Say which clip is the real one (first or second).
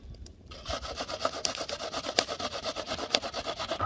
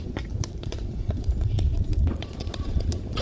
first